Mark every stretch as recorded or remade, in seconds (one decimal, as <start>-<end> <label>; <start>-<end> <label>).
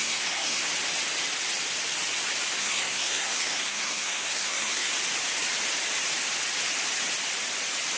0.0-0.6 remade; 0.6-2.6 recorded; 2.6-4.9 remade; 4.9-8.0 recorded